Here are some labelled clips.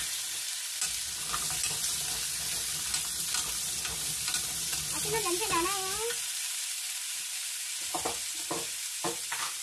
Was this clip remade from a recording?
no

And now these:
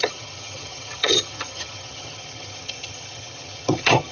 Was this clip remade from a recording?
yes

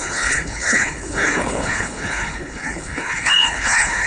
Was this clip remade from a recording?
yes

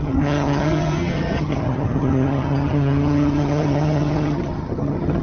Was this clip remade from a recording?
yes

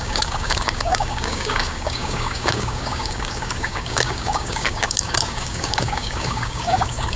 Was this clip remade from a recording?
yes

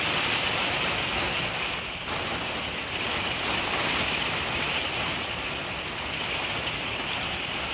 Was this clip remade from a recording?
no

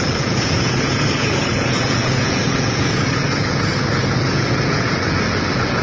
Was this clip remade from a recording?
yes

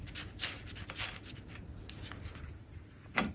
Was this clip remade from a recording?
no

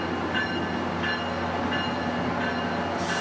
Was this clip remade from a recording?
no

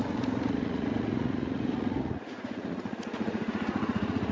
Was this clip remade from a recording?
yes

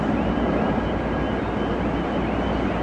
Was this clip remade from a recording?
no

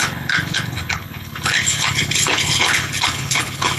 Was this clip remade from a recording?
yes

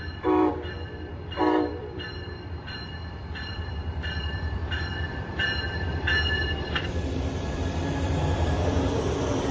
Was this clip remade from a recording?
yes